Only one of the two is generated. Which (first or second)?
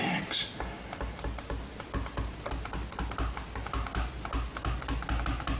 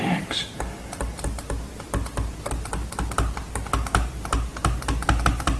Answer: second